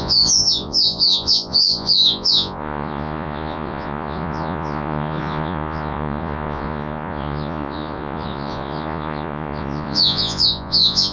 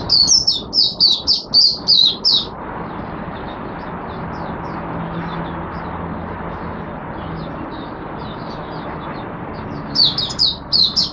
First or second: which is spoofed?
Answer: first